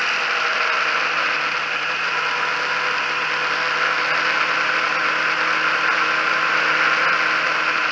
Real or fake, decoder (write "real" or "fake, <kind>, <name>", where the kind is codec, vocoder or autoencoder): real